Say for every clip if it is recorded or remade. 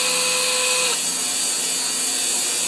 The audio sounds recorded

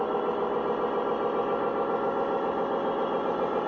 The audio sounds recorded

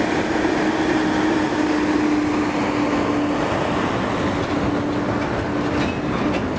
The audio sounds recorded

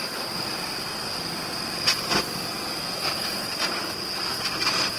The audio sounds recorded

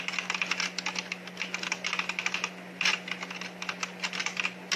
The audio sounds recorded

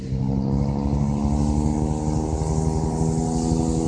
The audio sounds recorded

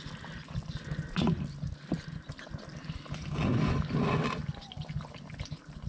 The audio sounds recorded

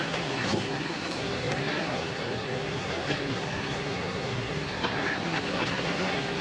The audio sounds remade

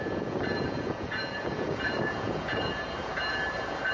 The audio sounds remade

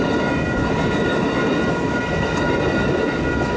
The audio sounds recorded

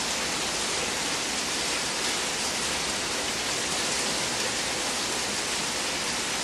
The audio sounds recorded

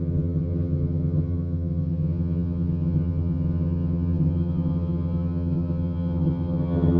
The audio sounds remade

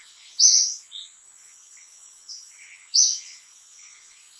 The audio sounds remade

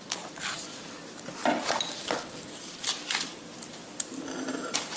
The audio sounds remade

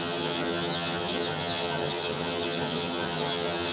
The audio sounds remade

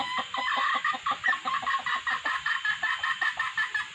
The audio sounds recorded